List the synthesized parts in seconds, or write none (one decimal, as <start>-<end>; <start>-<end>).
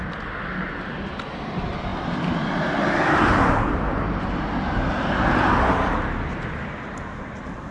none